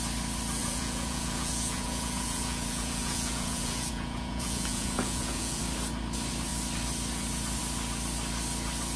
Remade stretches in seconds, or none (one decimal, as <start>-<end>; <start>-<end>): 0.6-5.6